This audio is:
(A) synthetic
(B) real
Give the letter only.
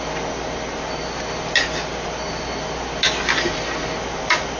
B